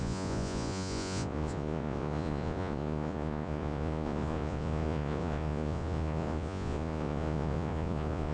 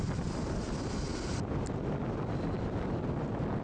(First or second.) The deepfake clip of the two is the first